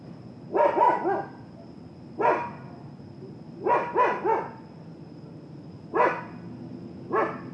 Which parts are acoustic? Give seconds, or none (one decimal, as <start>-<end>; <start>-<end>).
2.3-6.8